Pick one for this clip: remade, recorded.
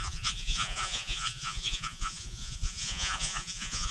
remade